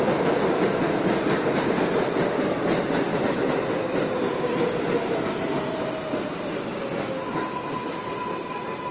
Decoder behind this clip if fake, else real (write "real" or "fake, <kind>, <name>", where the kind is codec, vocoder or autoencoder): real